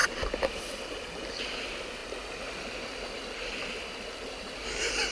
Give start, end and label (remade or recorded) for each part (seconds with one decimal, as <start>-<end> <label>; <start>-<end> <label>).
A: 0.0-5.1 recorded